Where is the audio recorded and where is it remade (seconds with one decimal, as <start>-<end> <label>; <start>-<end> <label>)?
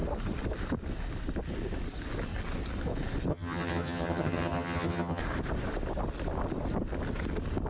0.0-3.3 recorded; 3.3-5.2 remade; 5.2-7.7 recorded